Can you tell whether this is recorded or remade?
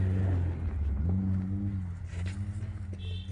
recorded